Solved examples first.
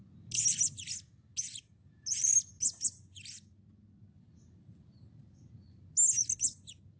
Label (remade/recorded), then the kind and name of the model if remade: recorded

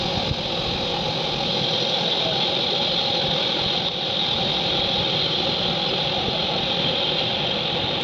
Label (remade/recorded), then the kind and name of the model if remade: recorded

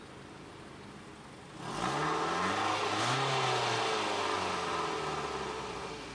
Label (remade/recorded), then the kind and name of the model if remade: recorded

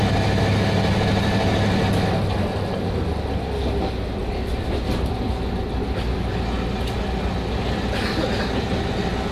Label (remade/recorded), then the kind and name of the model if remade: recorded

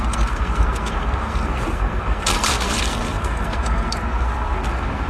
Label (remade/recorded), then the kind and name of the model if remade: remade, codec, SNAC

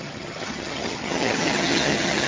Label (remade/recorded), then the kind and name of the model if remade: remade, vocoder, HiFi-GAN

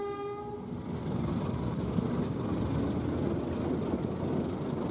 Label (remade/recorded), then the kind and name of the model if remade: recorded